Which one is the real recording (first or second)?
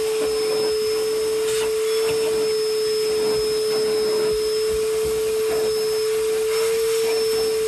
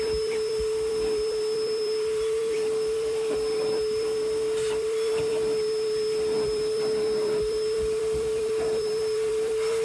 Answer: first